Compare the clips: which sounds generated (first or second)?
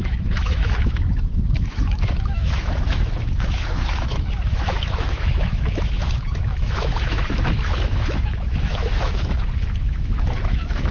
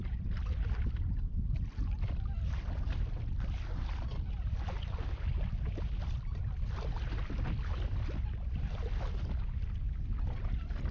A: first